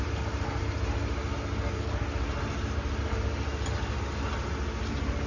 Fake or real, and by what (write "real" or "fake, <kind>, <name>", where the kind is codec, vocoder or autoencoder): real